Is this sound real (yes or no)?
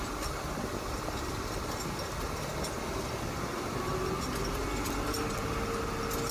yes